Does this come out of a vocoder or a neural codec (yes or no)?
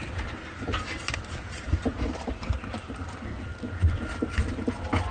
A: no